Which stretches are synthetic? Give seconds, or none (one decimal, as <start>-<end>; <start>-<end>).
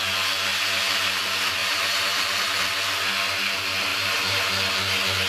0.5-1.2; 1.6-2.6; 3.9-4.5